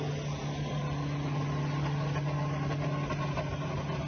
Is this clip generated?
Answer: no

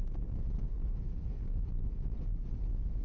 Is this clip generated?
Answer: yes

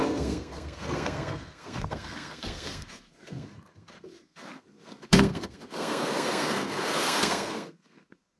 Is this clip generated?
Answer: yes